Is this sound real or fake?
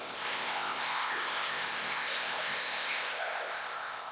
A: fake